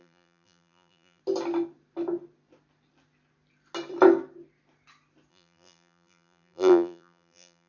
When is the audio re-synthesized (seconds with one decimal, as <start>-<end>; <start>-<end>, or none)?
0.0-1.2; 5.3-7.7